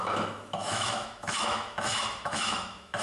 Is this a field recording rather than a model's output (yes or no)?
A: no